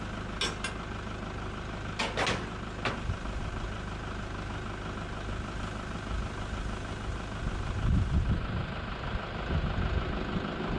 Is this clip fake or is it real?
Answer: real